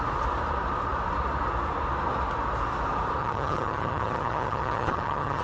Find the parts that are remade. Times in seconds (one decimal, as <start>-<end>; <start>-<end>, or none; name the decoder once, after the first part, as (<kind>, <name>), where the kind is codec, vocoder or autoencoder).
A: 3.2-5.4 (vocoder, HiFi-GAN)